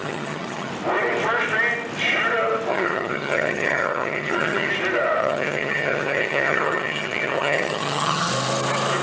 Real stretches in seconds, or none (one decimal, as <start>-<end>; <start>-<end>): 0.7-2.7; 4.7-5.2; 8.3-9.0